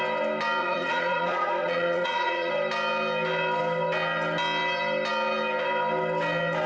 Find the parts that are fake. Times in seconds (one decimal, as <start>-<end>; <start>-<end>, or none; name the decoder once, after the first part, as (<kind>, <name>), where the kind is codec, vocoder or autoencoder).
0.6-2.5 (vocoder, Vocos)